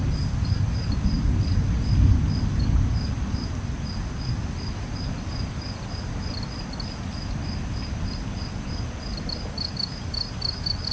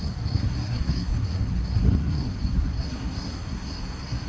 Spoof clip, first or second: second